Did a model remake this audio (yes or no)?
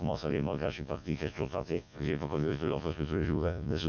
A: yes